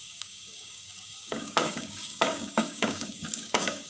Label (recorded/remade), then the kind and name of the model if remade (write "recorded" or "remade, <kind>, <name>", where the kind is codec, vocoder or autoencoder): remade, codec, DAC